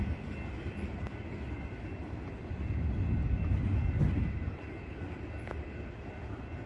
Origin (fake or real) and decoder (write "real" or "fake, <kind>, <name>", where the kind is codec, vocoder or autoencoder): real